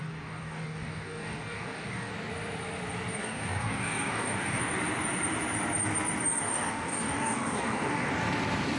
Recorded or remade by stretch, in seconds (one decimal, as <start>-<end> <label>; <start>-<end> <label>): 0.0-2.1 remade; 2.1-3.2 recorded; 3.2-4.6 remade; 4.6-6.3 recorded; 6.3-8.1 remade; 8.1-8.8 recorded